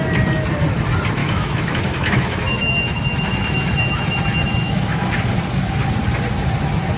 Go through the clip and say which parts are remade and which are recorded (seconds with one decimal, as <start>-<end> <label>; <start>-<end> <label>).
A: 0.0-1.2 recorded; 1.2-5.1 remade; 5.1-7.0 recorded